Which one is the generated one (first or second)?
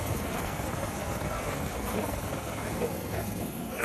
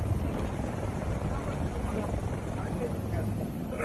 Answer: first